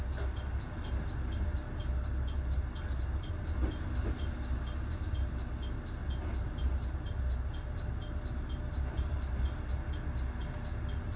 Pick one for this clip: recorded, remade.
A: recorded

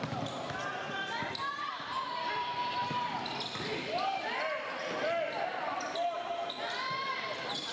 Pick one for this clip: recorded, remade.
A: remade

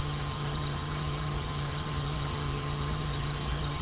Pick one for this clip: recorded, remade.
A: remade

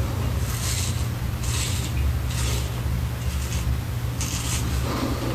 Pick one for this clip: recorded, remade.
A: recorded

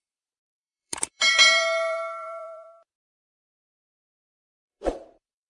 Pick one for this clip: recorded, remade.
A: remade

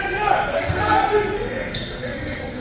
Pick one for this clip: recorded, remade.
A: remade